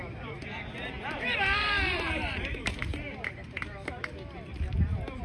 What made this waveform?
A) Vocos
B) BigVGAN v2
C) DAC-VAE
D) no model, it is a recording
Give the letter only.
B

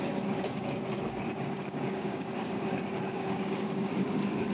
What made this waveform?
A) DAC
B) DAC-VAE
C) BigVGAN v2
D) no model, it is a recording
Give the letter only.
A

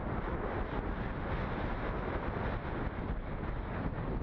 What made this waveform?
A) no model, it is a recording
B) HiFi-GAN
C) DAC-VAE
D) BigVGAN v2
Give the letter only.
A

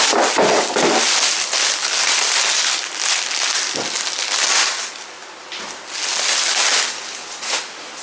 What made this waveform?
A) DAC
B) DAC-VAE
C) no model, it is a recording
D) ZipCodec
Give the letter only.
C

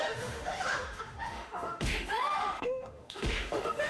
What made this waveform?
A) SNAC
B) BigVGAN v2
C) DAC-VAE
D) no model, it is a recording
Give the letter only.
C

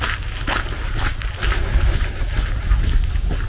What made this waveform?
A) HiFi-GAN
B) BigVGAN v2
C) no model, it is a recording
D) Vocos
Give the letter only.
C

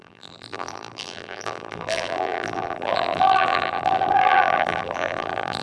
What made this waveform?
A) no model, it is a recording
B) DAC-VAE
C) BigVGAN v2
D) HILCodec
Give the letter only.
C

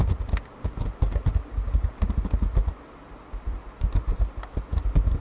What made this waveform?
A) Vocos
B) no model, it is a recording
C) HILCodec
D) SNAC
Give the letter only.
B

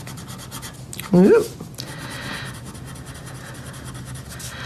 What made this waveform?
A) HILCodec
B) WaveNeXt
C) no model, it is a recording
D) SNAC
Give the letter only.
C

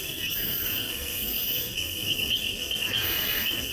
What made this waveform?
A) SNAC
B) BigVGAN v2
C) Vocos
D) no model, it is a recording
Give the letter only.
A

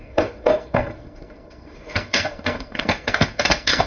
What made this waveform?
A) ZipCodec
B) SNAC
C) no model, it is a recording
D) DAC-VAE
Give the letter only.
B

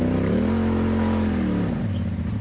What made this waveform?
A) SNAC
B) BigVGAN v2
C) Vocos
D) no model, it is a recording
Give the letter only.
D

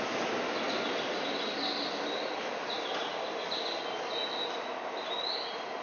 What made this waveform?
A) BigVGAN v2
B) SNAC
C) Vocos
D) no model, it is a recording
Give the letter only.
D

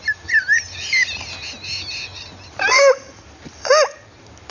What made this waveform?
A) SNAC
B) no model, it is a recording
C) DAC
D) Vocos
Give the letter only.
B